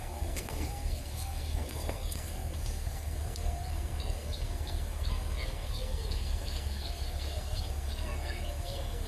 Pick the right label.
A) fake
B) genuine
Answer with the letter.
A